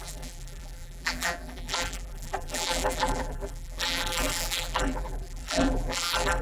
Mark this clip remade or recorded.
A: remade